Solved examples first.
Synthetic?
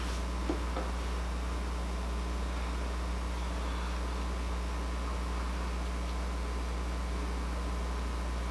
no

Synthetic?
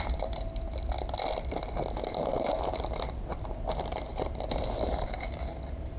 no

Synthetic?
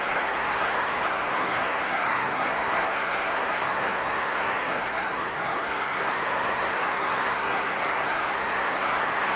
yes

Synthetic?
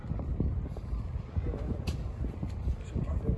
no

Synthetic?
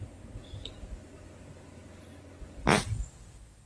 no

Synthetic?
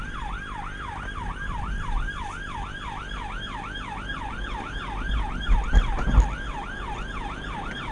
no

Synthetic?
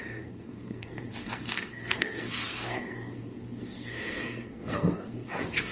yes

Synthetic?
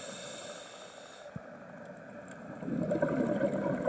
no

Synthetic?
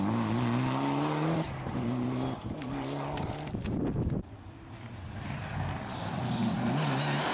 no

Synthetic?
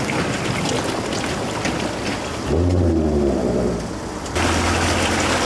no